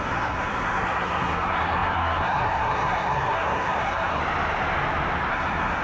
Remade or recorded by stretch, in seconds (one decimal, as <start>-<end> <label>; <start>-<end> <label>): 0.0-4.2 remade; 4.2-5.3 recorded; 5.3-5.8 remade

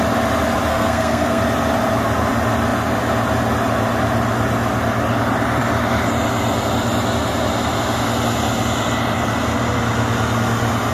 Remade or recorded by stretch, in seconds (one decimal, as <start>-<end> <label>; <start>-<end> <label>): 0.0-0.7 recorded; 0.7-1.4 remade; 1.4-10.9 recorded

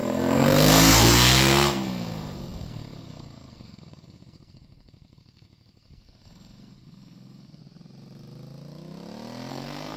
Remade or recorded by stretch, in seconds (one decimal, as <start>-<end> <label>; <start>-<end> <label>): 0.0-7.6 remade; 7.6-9.5 recorded; 9.5-10.0 remade

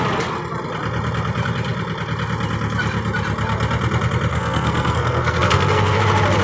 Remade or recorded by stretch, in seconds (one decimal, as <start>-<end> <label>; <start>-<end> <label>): 0.0-4.3 recorded; 4.3-6.0 remade; 6.0-6.4 recorded

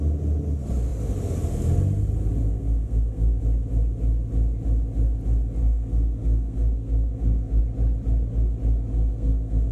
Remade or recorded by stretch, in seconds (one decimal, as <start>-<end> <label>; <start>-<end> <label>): 0.0-2.4 recorded; 2.4-3.4 remade; 3.4-5.6 recorded; 5.6-7.6 remade; 7.6-8.9 recorded; 8.9-9.7 remade